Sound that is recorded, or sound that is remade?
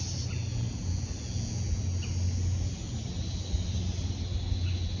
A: recorded